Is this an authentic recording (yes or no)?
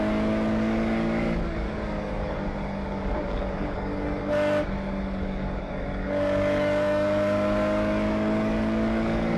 no